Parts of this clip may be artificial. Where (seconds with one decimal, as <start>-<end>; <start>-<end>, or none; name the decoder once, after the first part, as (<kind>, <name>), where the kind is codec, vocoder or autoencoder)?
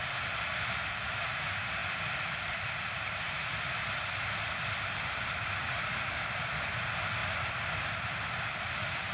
1.8-6.7 (vocoder, BigVGAN v2); 7.2-7.7